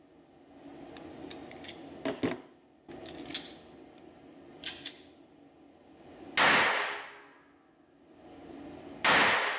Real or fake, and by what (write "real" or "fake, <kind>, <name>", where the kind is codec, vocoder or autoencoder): real